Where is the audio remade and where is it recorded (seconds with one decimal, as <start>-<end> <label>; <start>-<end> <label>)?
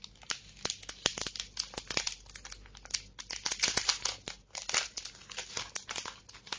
0.0-6.6 recorded